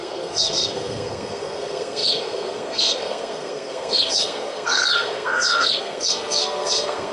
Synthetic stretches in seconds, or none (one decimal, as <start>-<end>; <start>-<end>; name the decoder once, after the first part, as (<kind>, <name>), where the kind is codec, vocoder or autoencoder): 0.0-7.1 (codec, SNAC)